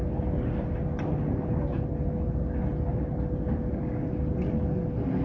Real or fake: real